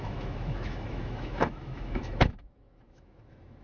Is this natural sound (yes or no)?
no